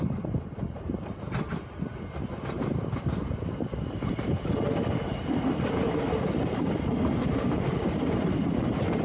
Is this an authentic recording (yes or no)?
yes